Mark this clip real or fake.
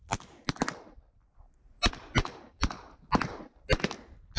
real